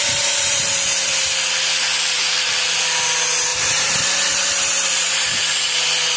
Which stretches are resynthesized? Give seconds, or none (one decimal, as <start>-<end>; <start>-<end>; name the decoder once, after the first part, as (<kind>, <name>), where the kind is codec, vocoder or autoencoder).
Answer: 0.0-0.8 (vocoder, BigVGAN v2); 3.5-5.5